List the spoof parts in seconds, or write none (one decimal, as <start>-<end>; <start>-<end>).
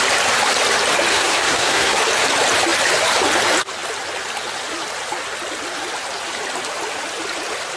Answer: 1.1-2.0